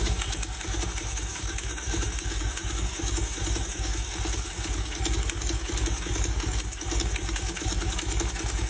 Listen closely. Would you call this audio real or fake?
fake